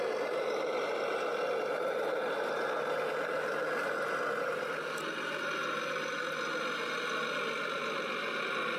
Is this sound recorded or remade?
recorded